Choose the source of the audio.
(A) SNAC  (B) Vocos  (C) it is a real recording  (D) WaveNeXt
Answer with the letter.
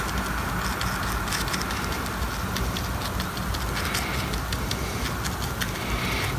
C